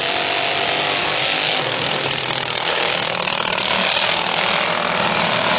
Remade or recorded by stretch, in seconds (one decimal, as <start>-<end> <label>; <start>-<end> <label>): 0.0-1.0 recorded; 1.0-4.4 remade; 4.4-5.6 recorded